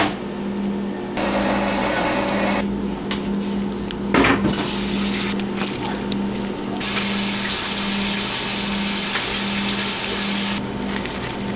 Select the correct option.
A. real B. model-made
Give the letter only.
A